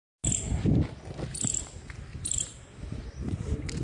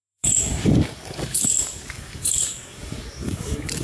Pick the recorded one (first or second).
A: first